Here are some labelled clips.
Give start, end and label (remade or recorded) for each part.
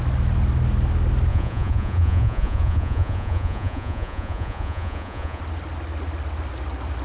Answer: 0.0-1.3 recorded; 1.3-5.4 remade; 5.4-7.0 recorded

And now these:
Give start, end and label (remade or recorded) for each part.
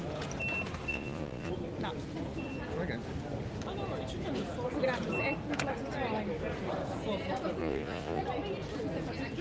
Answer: 0.0-0.9 recorded; 0.9-1.5 remade; 1.5-7.6 recorded; 7.6-8.2 remade; 8.2-9.4 recorded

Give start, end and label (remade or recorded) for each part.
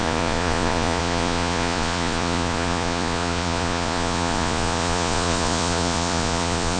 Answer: 0.0-6.8 remade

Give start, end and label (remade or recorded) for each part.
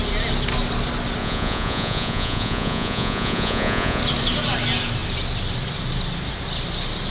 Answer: 0.0-1.2 recorded; 1.2-4.0 remade; 4.0-7.1 recorded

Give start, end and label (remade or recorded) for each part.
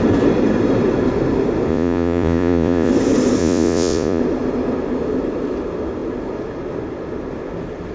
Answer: 0.0-1.7 recorded; 1.7-2.9 remade; 2.9-3.4 recorded; 3.4-4.2 remade; 4.2-7.9 recorded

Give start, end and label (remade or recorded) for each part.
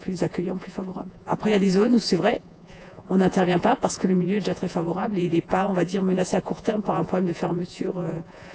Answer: 0.0-8.5 remade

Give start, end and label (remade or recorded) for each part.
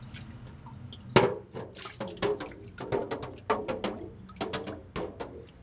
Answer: 0.0-5.6 recorded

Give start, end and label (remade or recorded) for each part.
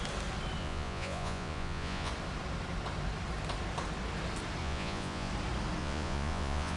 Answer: 0.0-0.6 recorded; 0.6-2.1 remade; 2.1-4.6 recorded; 4.6-5.3 remade; 5.3-5.8 recorded; 5.8-6.8 remade